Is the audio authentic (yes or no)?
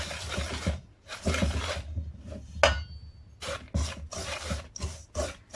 yes